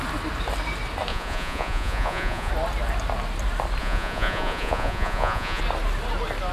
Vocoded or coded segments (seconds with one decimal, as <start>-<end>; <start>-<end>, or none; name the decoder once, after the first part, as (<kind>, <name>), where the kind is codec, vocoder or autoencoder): 1.1-2.5 (vocoder, Vocos); 3.8-5.6